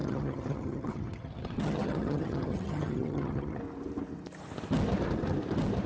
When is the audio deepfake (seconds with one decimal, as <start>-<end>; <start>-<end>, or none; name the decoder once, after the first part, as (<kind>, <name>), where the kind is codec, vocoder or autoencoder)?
0.0-3.6 (vocoder, HiFi-GAN)